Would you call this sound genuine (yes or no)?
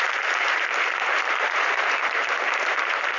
no